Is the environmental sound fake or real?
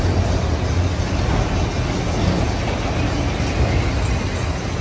real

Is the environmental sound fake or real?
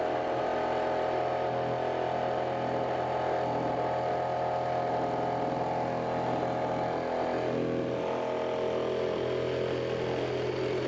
real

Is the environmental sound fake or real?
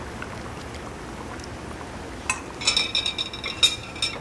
real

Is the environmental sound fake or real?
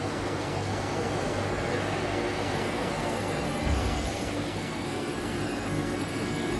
fake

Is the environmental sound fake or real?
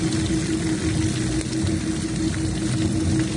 real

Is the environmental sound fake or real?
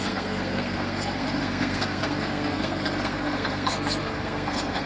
fake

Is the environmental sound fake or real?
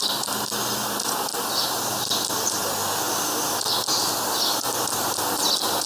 real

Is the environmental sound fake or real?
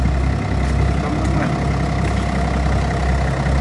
real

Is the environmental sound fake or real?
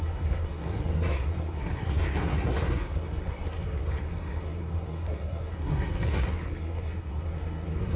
fake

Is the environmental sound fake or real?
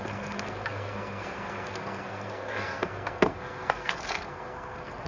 fake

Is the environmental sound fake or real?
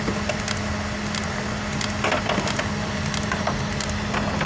real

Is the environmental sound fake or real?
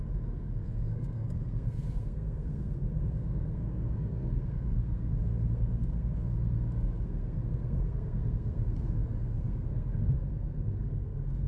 fake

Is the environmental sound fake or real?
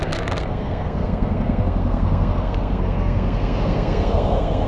fake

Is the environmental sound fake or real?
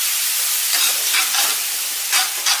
real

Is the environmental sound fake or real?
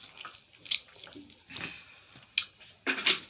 real